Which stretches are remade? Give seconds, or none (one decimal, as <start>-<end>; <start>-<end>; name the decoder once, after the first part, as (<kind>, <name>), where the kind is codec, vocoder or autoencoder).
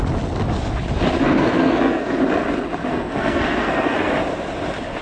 1.2-2.2 (codec, SNAC); 2.9-4.1